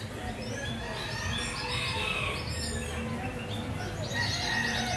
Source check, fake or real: real